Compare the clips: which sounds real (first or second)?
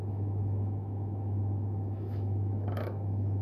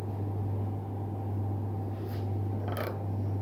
second